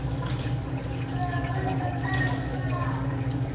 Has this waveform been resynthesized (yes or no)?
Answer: yes